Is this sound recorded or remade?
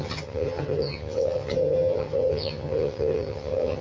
remade